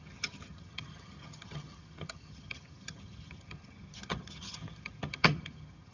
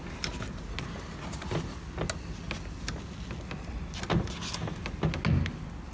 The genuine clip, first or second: second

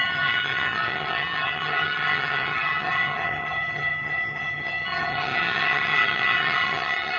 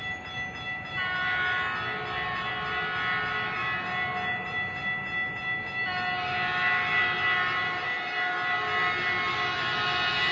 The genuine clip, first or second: second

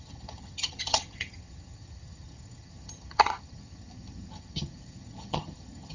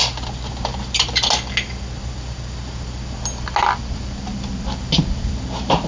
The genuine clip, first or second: second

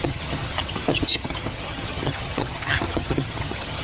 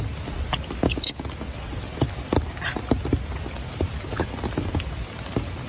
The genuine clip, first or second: second